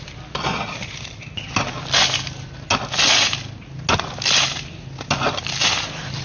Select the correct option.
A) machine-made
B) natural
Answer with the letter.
B